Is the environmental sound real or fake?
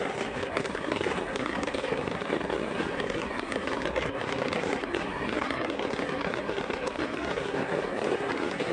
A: fake